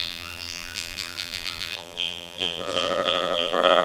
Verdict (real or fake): fake